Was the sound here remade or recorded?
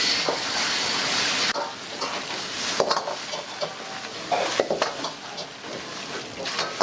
recorded